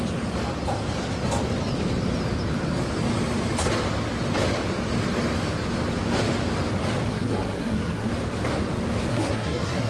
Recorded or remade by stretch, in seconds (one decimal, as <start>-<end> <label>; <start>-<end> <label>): 0.0-7.1 recorded; 7.1-8.1 remade; 8.1-9.1 recorded; 9.1-9.9 remade